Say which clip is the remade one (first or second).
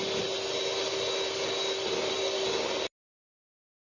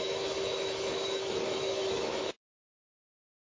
second